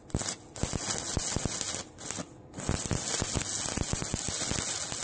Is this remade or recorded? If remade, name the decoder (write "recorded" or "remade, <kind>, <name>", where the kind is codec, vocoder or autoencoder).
recorded